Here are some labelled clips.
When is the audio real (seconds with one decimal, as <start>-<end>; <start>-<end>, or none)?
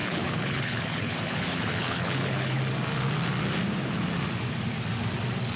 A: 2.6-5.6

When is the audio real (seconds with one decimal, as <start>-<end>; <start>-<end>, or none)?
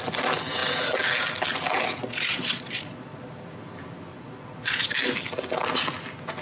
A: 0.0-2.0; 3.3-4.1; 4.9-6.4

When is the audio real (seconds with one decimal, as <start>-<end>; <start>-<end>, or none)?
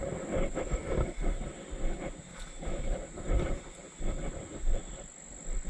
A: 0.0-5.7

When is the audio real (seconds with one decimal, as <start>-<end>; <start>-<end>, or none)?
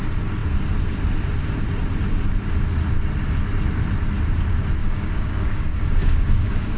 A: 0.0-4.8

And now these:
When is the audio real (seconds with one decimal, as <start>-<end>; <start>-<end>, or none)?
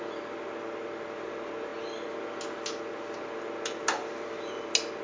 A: 0.0-5.0